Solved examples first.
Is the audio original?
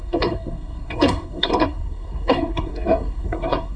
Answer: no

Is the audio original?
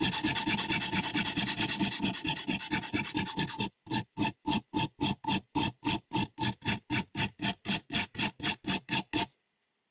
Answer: yes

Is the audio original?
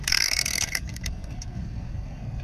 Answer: no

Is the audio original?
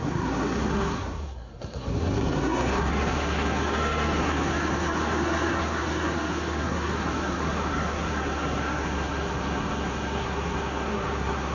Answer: no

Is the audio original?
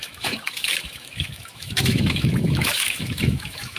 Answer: no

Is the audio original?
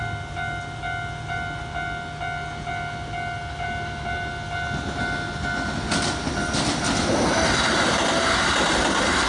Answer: yes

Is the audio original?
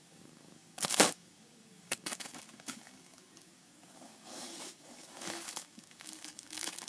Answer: no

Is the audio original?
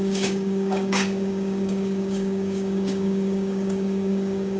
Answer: no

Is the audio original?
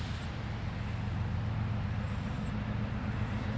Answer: yes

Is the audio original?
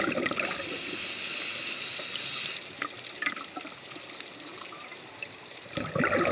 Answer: yes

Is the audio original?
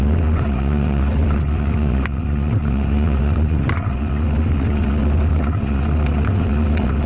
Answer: no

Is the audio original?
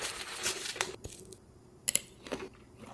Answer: yes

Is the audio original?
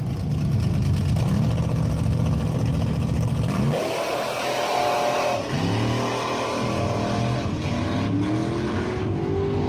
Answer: yes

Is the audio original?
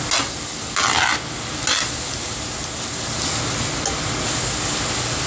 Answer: yes